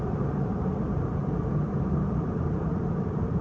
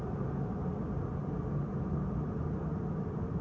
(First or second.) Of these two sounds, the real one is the second